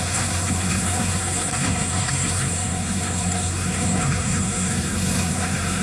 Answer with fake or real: fake